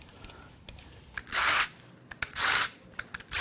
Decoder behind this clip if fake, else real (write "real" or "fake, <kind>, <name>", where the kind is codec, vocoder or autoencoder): real